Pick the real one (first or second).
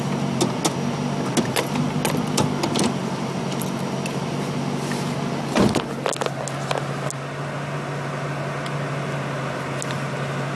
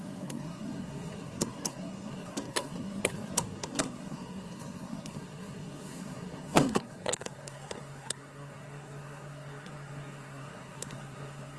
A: first